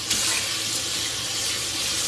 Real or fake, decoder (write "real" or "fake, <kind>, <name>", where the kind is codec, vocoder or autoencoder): fake, vocoder, BigVGAN v2